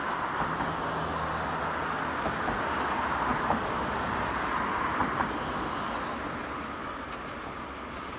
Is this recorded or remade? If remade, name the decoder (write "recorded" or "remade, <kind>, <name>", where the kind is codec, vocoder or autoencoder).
recorded